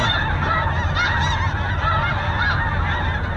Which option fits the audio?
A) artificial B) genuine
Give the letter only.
B